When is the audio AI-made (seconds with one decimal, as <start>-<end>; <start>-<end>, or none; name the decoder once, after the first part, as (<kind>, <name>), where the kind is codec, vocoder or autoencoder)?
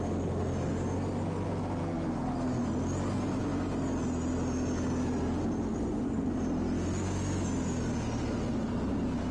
5.7-6.3 (vocoder, Vocos)